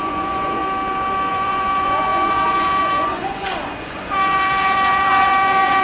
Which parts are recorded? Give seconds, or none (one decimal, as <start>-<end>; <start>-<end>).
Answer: 0.6-1.3